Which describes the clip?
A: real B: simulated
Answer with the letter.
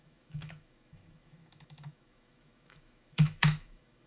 B